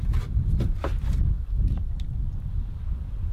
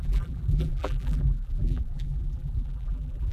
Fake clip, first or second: second